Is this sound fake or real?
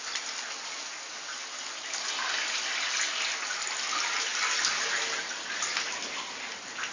real